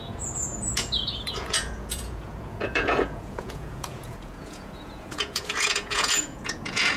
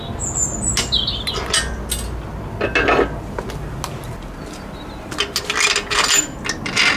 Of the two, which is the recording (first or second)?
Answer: second